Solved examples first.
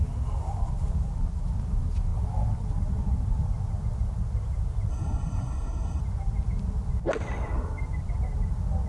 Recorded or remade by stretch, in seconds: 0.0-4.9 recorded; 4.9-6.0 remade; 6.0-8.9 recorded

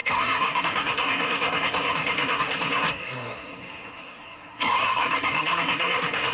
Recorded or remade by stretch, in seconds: 0.0-6.3 remade